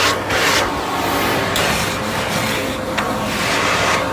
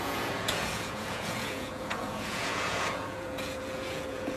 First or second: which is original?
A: first